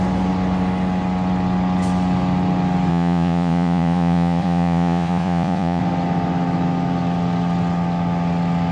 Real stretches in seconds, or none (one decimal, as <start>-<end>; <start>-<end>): 0.0-2.9; 5.8-8.7